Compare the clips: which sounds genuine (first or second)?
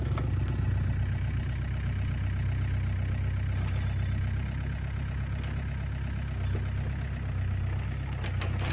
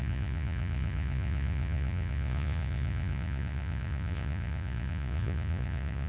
first